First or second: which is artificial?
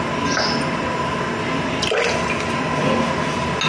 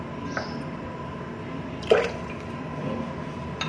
second